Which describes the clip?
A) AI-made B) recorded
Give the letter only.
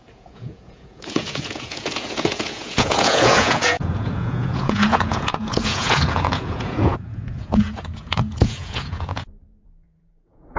A